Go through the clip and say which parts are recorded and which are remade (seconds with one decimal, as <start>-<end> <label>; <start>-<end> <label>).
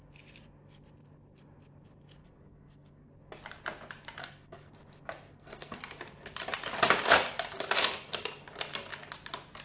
0.0-2.2 recorded; 2.2-3.1 remade; 3.1-4.2 recorded; 4.2-4.7 remade; 4.7-5.3 recorded; 5.3-5.8 remade; 5.8-9.6 recorded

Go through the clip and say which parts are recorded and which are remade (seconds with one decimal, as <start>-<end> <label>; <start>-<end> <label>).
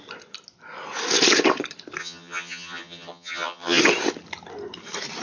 0.0-2.0 recorded; 2.0-3.8 remade; 3.8-5.2 recorded